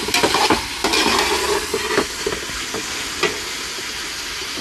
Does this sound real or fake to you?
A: real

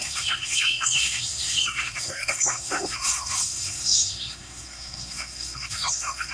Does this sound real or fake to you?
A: fake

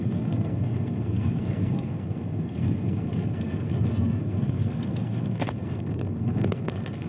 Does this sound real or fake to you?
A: fake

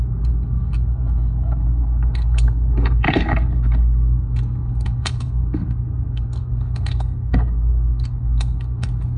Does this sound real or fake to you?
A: fake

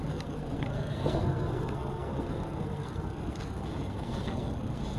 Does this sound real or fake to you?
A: fake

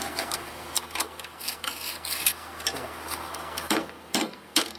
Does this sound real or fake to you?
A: fake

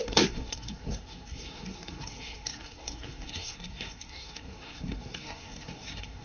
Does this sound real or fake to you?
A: fake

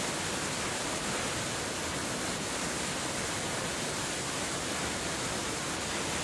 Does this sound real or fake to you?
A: real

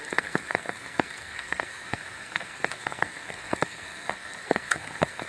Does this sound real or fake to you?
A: fake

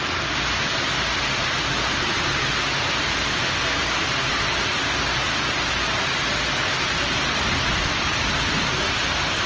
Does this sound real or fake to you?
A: real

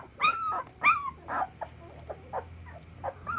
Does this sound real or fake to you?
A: real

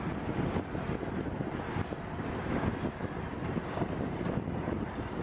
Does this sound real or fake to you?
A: real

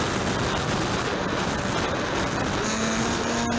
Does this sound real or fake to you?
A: real